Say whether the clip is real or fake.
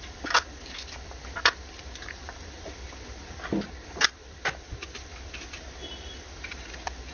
real